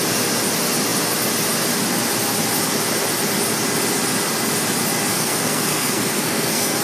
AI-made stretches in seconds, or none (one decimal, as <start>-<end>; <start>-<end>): 5.1-6.8